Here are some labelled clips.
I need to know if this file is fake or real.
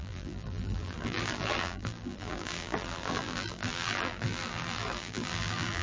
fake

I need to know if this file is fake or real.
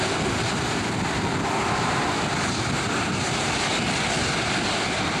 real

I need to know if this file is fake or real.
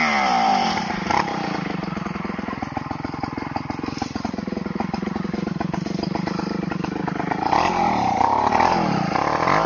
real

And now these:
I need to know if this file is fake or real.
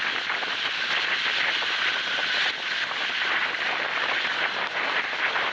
real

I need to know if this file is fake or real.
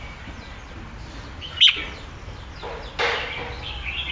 real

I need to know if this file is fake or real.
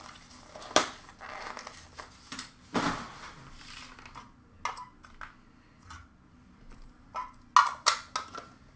real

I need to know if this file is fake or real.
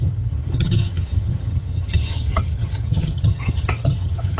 fake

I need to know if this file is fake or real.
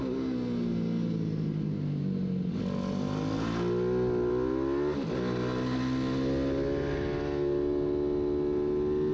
real